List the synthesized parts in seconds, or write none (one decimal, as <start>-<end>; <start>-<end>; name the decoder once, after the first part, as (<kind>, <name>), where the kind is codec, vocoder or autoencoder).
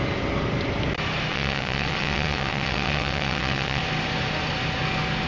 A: 1.3-3.8 (vocoder, WaveNeXt)